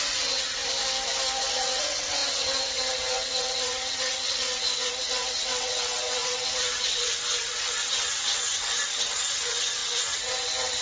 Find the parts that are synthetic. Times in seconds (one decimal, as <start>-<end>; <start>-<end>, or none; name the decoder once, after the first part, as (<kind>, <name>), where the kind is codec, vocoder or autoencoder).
0.0-0.6 (vocoder, WaveNeXt); 1.5-10.8